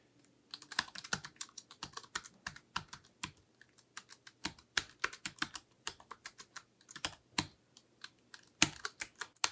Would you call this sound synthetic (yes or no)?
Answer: no